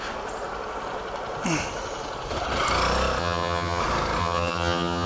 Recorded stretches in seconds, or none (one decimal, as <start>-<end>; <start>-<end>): 0.0-3.2; 3.8-4.2